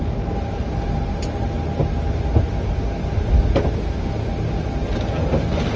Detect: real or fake real